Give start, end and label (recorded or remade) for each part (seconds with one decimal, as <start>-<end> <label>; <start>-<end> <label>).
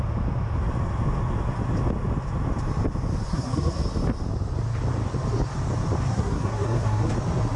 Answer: 0.0-3.3 recorded; 3.3-3.8 remade; 3.8-6.1 recorded; 6.1-7.1 remade; 7.1-7.6 recorded